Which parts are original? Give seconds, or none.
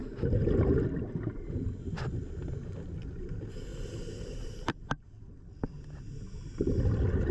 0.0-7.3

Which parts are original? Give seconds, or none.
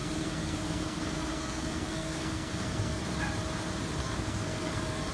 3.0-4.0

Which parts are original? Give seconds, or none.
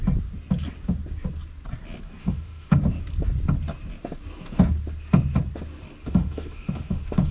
0.0-2.2; 2.8-6.0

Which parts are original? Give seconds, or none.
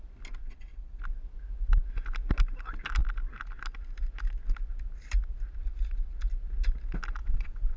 0.0-0.4; 1.0-7.2